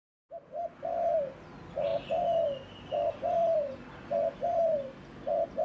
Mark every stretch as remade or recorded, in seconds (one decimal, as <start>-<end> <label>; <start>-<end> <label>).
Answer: 0.0-3.4 recorded; 3.4-4.6 remade; 4.6-5.6 recorded